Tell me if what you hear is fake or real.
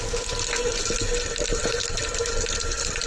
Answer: real